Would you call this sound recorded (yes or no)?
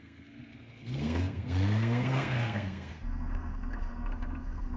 no